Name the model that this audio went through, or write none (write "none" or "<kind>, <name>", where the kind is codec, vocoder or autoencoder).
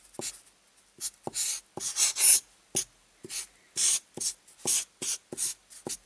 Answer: none